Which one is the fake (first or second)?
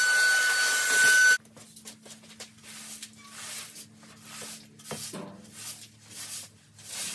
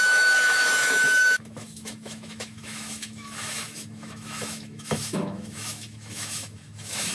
second